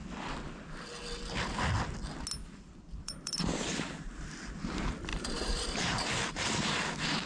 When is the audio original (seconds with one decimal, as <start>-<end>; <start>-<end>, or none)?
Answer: 0.0-2.4; 4.3-5.1; 6.1-7.3